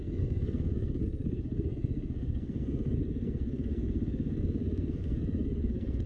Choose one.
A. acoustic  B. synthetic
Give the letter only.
B